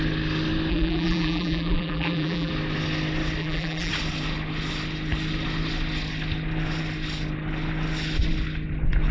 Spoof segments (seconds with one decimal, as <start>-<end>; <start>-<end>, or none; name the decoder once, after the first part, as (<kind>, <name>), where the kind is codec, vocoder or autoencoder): 0.7-2.5 (vocoder, BigVGAN v2); 3.4-3.9